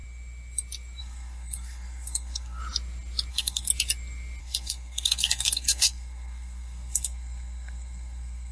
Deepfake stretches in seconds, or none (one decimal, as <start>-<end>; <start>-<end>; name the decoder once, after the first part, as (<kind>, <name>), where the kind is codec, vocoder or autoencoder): 1.0-2.6 (codec, SNAC); 3.3-3.7; 4.4-8.5